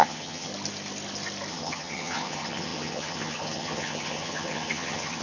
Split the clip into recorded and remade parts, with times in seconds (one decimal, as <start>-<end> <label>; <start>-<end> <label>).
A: 0.0-0.5 remade; 0.5-1.5 recorded; 1.5-5.2 remade